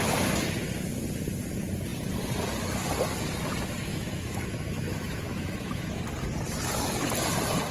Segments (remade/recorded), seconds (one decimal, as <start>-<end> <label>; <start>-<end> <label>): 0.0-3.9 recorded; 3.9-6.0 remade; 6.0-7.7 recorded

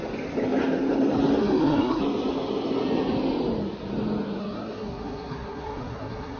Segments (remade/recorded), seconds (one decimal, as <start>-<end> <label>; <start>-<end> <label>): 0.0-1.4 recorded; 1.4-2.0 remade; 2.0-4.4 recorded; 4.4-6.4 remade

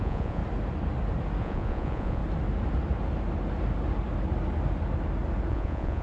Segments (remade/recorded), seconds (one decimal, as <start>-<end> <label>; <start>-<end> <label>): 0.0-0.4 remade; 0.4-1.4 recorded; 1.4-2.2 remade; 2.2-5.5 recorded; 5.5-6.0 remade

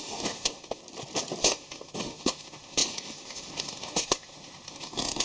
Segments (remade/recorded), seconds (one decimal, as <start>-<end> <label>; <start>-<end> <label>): 0.0-0.8 remade; 0.8-1.4 recorded; 1.4-5.2 remade

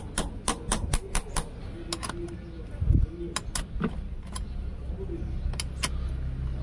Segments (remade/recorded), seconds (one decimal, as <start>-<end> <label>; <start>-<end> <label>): 0.0-6.6 recorded